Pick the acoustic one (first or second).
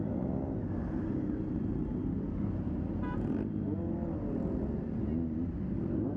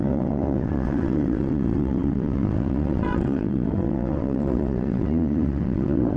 first